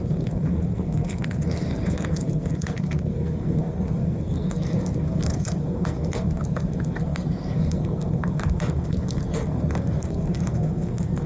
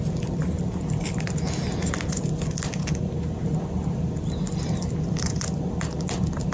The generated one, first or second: first